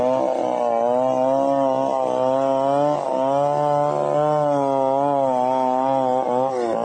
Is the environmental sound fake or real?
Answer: real